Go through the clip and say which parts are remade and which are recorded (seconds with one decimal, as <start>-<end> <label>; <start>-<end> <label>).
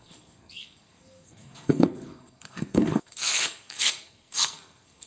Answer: 0.0-5.1 remade